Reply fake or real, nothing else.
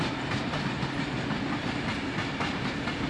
real